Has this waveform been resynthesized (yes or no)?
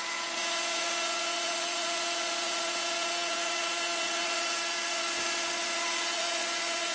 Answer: yes